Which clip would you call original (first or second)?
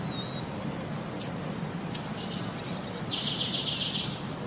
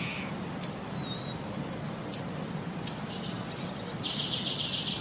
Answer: first